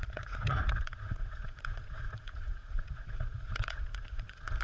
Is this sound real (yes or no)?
no